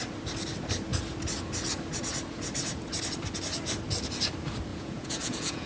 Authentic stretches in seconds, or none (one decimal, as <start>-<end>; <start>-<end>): 0.0-4.7